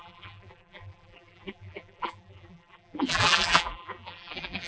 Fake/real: fake